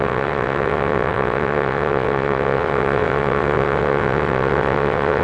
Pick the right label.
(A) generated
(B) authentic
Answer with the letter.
A